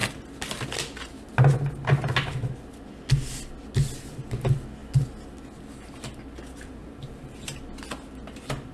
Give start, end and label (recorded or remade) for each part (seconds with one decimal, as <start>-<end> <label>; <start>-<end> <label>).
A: 0.0-6.8 recorded; 6.8-7.6 remade; 7.6-8.7 recorded